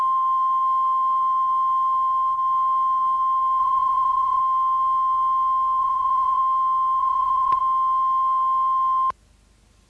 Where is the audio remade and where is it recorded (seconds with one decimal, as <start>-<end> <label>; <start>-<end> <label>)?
0.0-3.6 recorded; 3.6-4.4 remade; 4.4-5.8 recorded; 5.8-6.4 remade; 6.4-7.0 recorded; 7.0-7.6 remade; 7.6-9.9 recorded